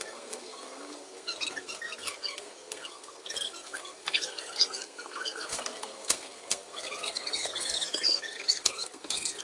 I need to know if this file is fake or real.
fake